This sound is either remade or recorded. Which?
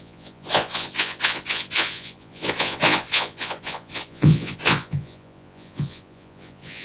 remade